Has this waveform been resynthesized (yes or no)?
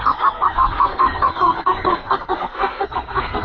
yes